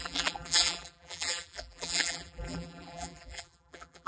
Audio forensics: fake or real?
fake